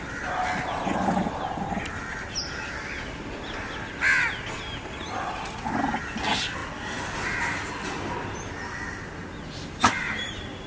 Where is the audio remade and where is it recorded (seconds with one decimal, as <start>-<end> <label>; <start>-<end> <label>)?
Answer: 0.0-10.7 recorded